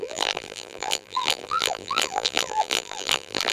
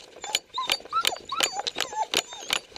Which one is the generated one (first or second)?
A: first